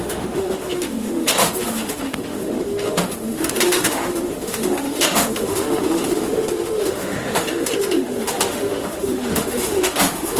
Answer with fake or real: fake